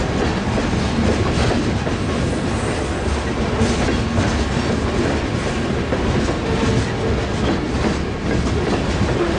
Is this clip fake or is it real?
real